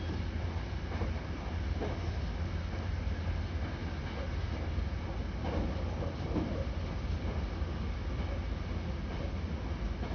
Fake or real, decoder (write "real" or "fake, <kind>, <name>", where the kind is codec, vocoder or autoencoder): real